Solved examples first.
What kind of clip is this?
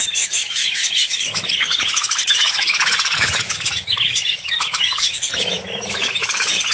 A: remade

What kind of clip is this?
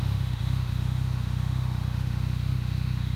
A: remade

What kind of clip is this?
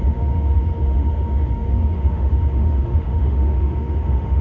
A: remade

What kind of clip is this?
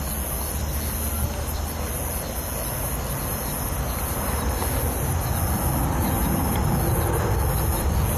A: recorded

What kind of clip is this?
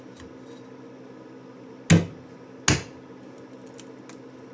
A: recorded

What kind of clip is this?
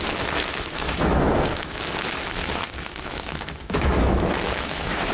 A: remade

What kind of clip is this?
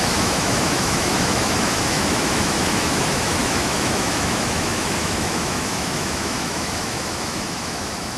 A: remade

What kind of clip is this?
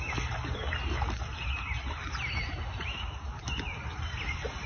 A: recorded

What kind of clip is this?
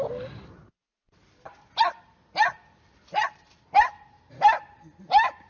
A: recorded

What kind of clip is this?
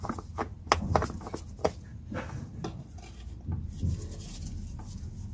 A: recorded